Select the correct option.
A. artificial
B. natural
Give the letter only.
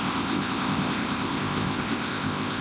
A